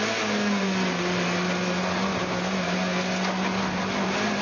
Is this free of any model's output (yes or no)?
yes